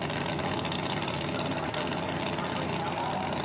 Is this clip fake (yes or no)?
no